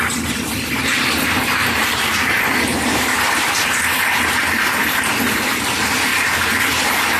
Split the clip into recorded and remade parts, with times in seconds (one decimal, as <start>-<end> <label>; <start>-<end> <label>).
0.0-1.6 recorded; 1.6-5.0 remade; 5.0-6.1 recorded; 6.1-7.2 remade